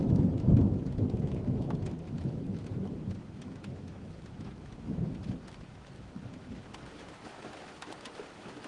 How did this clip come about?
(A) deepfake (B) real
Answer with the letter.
A